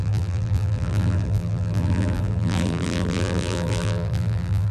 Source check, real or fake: fake